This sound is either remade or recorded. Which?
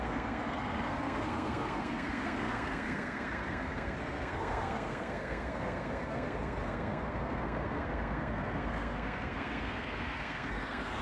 remade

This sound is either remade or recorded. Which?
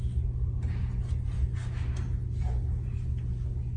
recorded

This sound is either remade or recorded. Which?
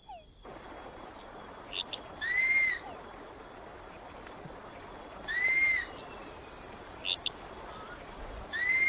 recorded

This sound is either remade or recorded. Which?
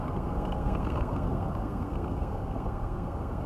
remade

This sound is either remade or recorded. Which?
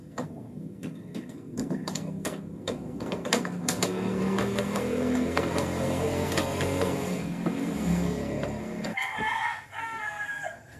remade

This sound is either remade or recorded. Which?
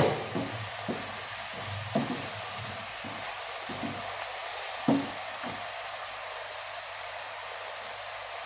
recorded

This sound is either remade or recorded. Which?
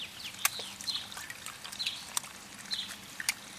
recorded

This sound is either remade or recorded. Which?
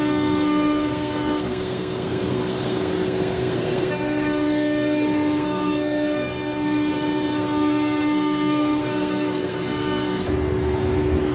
remade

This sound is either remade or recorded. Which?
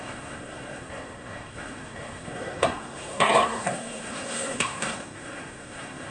remade